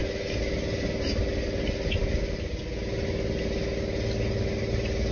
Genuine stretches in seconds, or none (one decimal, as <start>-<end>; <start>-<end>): 0.0-5.1